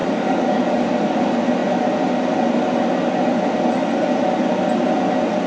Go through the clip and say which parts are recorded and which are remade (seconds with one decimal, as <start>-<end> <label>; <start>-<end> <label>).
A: 0.0-0.9 remade; 0.9-5.5 recorded